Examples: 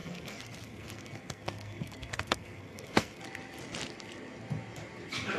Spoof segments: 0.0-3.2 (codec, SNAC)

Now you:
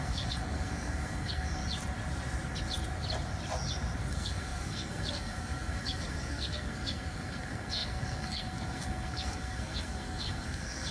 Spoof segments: 0.0-1.6 (codec, SNAC); 4.1-10.9

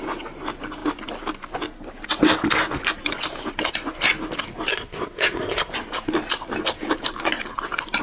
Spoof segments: 4.7-5.7 (codec, SNAC)

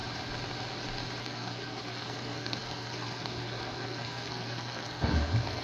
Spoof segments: 1.2-5.6 (codec, SNAC)